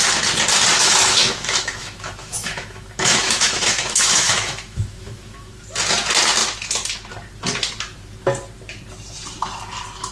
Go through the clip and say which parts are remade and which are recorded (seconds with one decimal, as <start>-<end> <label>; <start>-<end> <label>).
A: 0.0-0.8 recorded; 0.8-5.5 remade; 5.5-10.1 recorded